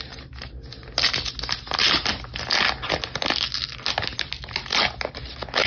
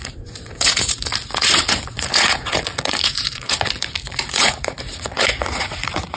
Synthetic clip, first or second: second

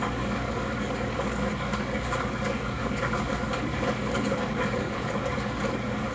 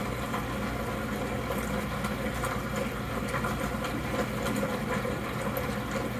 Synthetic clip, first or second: first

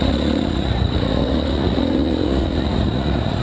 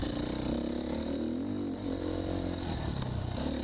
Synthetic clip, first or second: first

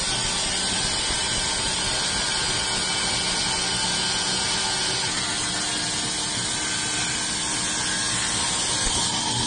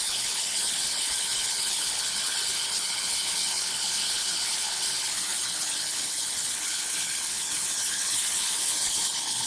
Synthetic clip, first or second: second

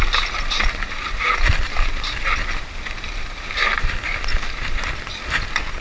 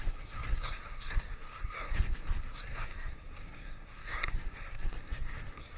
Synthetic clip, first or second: second